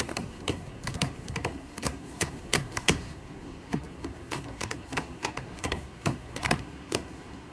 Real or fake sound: fake